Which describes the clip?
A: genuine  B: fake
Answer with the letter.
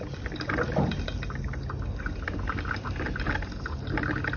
A